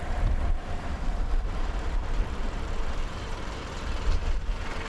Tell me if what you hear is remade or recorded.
remade